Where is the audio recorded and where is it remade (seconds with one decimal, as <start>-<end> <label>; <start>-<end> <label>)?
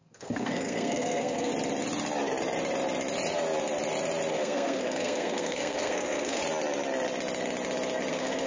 0.0-1.5 remade; 1.5-4.3 recorded; 4.3-6.4 remade; 6.4-8.1 recorded; 8.1-8.5 remade